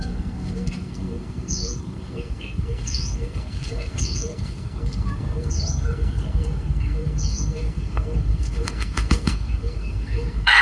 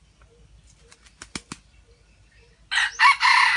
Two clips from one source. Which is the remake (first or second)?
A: first